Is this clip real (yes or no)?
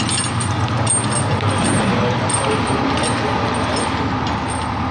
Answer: yes